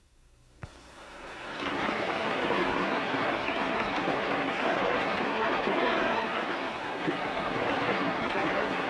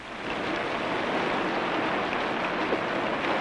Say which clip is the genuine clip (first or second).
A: second